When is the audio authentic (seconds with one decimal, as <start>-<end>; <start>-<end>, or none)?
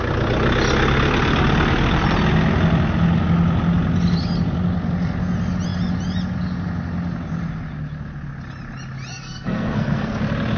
0.0-9.1; 10.2-10.6